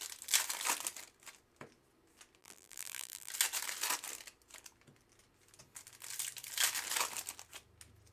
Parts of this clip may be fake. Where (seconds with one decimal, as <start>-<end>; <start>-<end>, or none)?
2.4-3.3